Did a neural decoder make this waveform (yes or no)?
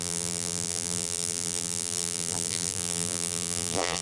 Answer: yes